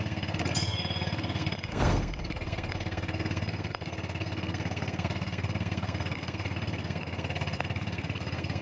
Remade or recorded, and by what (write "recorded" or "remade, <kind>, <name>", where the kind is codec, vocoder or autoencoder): remade, codec, SNAC